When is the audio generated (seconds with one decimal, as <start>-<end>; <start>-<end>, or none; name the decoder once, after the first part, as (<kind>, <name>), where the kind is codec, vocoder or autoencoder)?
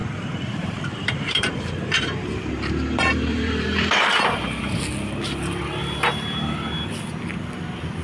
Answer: 0.0-4.8 (vocoder, BigVGAN v2)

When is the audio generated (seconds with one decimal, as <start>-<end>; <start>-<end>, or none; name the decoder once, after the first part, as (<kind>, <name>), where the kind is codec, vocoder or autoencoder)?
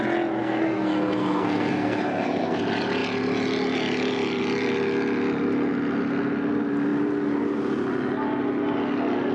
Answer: 0.4-2.6 (codec, SNAC)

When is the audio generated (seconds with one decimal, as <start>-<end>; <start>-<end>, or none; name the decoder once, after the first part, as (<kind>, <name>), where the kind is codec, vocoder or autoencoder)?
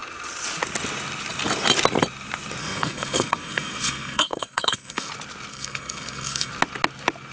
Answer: 2.6-5.1 (codec, SNAC); 5.5-6.5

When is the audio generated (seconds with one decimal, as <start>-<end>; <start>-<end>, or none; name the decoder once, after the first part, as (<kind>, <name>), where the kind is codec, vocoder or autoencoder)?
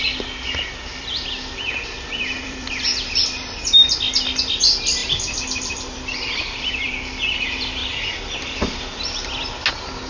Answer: 0.9-2.7 (vocoder, BigVGAN v2); 5.0-6.9; 7.8-9.0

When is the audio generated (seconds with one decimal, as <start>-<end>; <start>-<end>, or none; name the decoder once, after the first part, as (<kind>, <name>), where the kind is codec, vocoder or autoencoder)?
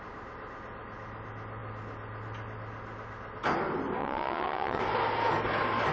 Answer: 4.0-4.8 (vocoder, WaveNeXt)